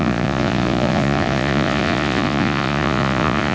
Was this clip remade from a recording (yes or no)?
yes